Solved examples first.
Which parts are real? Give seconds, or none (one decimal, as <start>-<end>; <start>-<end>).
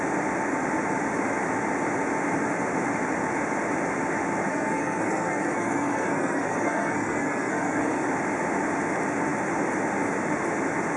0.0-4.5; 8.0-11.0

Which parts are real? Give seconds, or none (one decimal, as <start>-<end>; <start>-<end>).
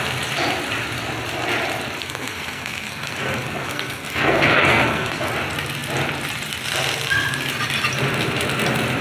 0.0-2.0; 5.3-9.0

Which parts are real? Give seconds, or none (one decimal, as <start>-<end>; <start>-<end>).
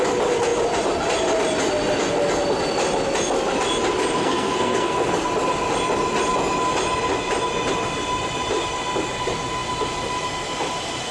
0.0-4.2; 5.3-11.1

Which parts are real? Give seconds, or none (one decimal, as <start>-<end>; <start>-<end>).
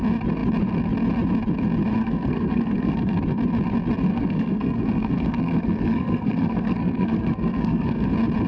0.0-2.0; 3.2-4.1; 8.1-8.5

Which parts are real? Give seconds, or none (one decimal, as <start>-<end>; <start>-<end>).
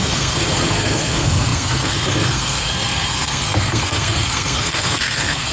none